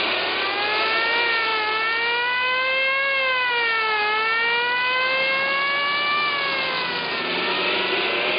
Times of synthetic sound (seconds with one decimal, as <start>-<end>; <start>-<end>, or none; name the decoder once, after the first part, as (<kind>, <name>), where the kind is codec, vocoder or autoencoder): none

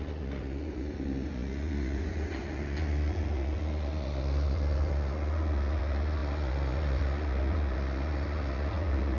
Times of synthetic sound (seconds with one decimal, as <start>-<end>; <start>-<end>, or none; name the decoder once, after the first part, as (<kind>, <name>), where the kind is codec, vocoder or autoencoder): 0.0-9.2 (vocoder, Vocos)

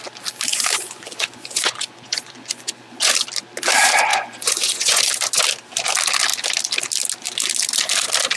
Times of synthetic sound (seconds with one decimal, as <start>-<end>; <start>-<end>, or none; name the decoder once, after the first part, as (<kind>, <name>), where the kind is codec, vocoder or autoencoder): 0.5-3.1 (vocoder, Vocos); 4.1-5.1

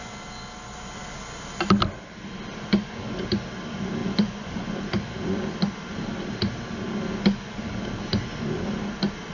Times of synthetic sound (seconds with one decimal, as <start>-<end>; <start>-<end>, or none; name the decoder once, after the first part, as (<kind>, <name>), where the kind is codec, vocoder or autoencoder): 2.7-3.2 (vocoder, Vocos); 4.0-4.8

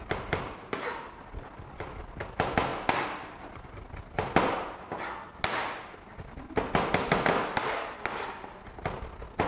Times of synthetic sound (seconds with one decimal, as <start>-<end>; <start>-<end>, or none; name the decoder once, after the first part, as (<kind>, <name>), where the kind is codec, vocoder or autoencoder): none

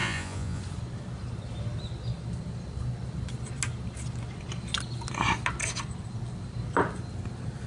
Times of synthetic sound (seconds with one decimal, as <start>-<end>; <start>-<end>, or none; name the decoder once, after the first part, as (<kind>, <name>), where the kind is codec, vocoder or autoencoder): 0.0-0.6 (vocoder, Vocos)